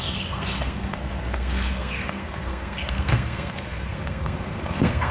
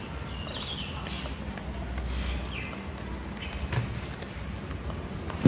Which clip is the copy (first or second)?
first